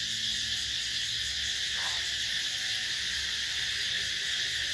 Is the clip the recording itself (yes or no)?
yes